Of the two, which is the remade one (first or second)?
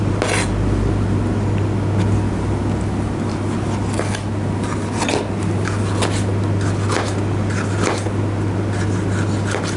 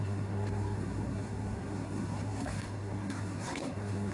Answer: second